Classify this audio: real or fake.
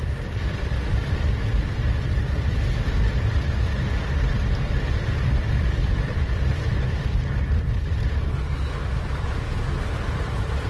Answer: fake